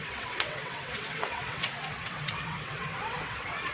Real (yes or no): no